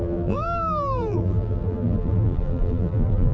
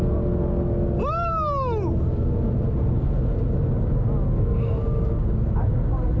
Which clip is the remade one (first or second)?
first